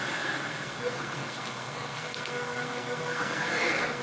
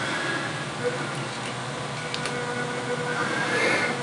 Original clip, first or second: second